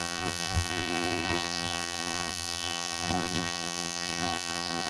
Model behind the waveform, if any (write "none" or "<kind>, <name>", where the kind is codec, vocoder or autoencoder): vocoder, BigVGAN v2